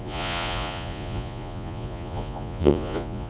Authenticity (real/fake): fake